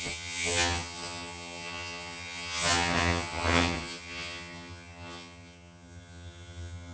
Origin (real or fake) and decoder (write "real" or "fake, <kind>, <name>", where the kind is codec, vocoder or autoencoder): fake, vocoder, HiFi-GAN